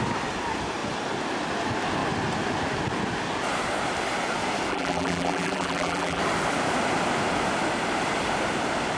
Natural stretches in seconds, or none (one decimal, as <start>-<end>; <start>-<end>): 0.0-4.7; 6.2-9.0